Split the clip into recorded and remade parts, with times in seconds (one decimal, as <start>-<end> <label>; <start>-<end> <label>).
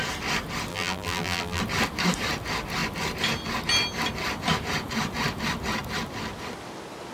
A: 0.0-0.7 recorded; 0.7-1.6 remade; 1.6-7.1 recorded